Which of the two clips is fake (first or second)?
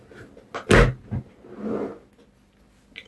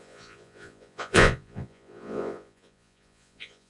second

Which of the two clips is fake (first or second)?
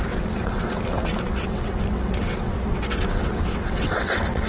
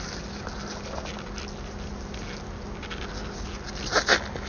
first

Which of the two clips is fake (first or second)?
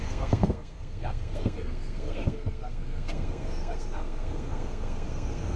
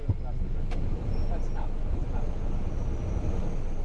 first